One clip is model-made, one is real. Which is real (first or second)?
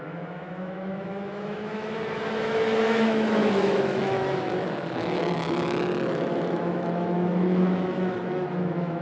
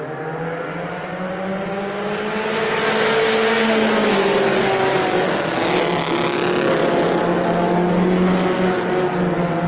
second